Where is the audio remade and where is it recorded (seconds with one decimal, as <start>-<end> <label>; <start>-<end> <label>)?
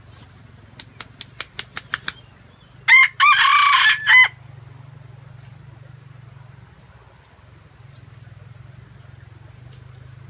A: 0.0-3.5 recorded; 3.5-4.1 remade; 4.1-10.3 recorded